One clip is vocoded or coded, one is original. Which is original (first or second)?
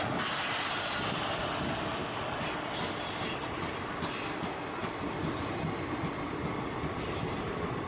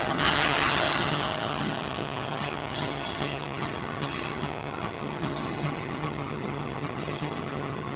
first